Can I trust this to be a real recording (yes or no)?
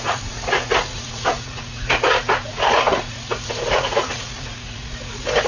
no